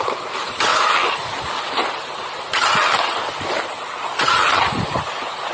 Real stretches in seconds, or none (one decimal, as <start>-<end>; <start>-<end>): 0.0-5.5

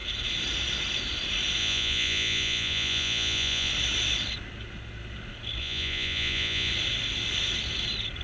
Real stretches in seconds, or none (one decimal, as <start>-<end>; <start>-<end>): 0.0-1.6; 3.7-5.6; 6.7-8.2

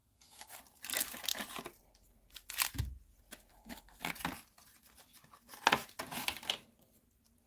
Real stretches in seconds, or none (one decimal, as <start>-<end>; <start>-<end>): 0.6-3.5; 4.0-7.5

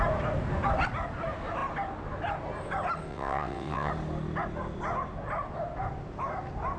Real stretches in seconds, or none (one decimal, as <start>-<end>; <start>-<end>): 0.0-3.1; 3.9-6.8

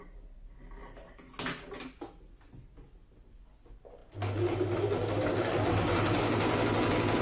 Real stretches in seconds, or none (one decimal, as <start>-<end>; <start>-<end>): 0.0-7.2

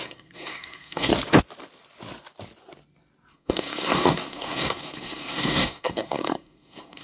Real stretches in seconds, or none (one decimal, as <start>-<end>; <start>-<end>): 1.1-3.3

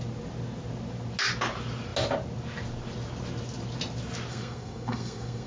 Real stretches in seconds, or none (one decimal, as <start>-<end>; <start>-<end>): 0.0-4.3

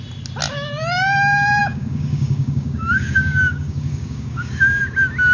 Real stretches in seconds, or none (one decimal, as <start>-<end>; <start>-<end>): 0.0-1.6; 4.8-5.3